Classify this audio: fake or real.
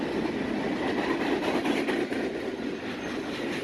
real